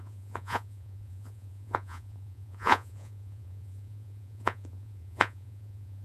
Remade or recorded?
remade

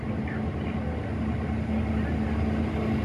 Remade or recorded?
recorded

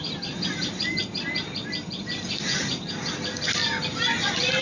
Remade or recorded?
recorded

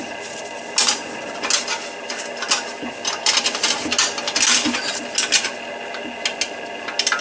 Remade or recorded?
recorded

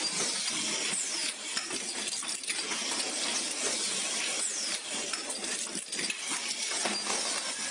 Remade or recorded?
recorded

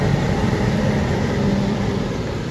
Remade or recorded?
remade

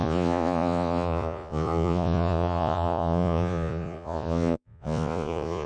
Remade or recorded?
remade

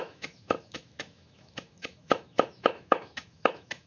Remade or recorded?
remade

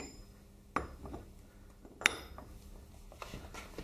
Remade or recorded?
recorded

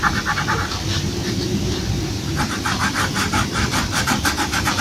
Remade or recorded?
remade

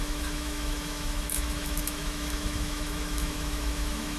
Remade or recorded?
remade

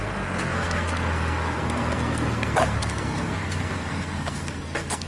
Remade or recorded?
remade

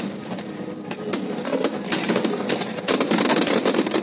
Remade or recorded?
remade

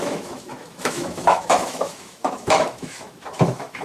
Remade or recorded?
remade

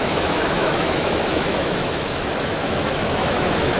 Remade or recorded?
remade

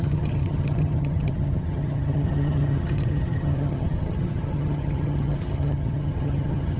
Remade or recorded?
remade